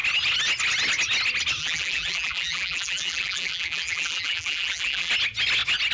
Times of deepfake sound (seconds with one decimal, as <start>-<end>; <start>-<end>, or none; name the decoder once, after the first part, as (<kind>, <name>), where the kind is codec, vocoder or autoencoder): 1.6-5.1 (vocoder, BigVGAN v2)